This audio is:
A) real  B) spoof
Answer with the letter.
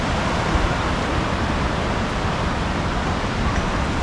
A